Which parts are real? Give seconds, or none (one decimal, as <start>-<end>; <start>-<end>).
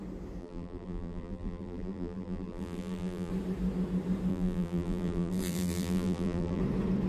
0.0-0.4; 3.3-4.3; 6.6-7.1